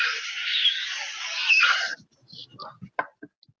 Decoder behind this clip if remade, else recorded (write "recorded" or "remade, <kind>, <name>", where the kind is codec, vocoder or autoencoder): recorded